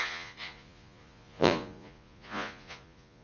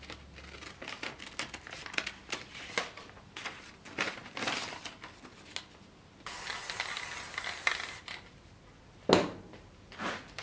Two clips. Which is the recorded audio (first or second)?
second